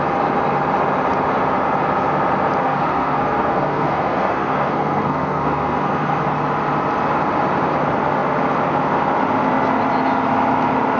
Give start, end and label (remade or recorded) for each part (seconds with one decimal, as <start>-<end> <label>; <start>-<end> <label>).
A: 0.0-2.6 recorded; 2.6-6.3 remade; 6.3-11.0 recorded